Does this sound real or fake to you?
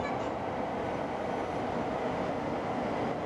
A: real